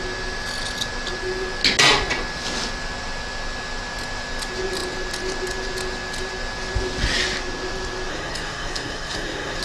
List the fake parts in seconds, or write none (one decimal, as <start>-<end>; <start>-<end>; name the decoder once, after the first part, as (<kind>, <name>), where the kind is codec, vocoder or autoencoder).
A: 8.1-9.6 (codec, SNAC)